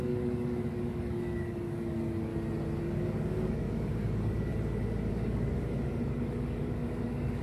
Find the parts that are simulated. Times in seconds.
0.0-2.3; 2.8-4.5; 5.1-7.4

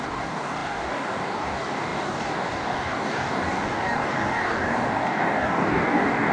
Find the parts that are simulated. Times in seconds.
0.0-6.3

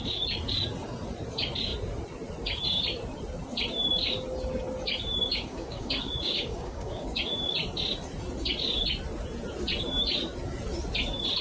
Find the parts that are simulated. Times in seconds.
5.2-7.2

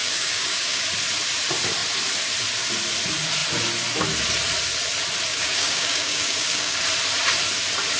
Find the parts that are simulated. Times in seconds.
0.0-0.8; 5.3-6.8

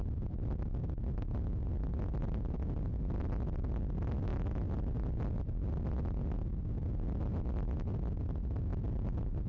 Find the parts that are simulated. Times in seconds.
none

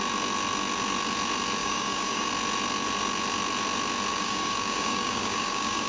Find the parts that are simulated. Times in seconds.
1.6-2.3; 4.1-5.9

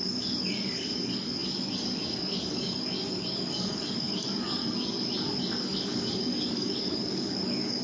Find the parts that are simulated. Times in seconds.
0.0-4.6; 5.3-7.8

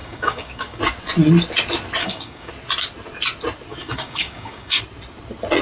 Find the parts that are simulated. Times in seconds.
0.0-0.8; 2.0-2.5; 3.7-4.8